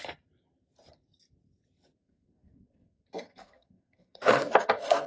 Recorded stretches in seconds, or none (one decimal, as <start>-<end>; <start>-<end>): 0.0-2.0